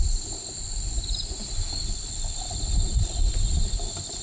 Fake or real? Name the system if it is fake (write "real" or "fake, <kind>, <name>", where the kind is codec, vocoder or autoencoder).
real